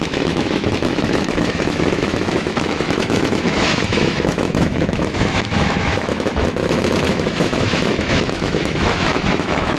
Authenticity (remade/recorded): remade